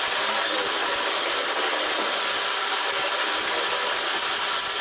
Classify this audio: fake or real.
real